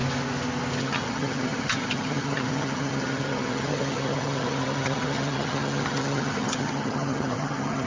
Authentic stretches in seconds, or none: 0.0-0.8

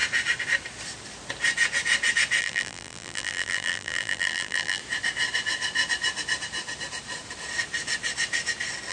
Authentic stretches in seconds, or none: 0.0-2.4; 4.8-8.9